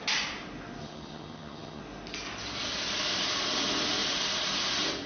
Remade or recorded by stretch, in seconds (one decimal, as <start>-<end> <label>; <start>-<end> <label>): 0.0-0.8 recorded; 0.8-1.8 remade; 1.8-5.1 recorded